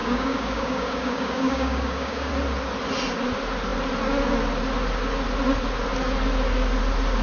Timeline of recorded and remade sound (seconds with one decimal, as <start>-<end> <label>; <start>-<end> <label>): 0.0-2.3 remade; 2.3-7.2 recorded